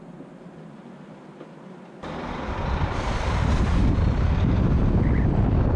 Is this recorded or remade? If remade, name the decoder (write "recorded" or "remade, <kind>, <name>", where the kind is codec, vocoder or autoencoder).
recorded